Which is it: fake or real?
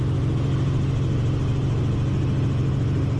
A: real